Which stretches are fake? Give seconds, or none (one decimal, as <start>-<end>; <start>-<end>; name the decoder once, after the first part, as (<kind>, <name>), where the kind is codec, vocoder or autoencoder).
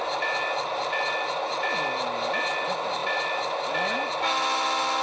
3.0-3.6 (vocoder, BigVGAN v2)